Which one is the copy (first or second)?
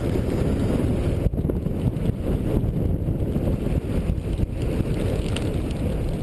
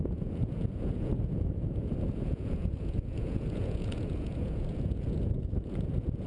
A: second